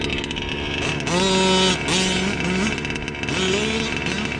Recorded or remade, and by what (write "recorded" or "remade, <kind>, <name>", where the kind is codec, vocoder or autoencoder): recorded